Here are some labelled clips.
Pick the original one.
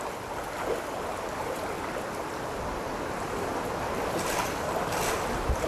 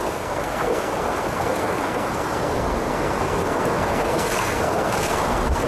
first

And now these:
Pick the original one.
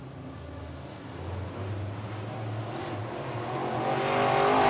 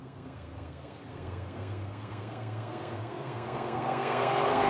first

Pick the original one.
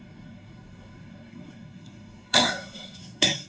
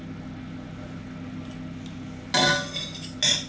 second